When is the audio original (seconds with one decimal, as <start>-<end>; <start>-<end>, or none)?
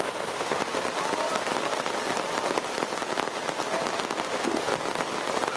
0.8-4.2; 4.7-5.6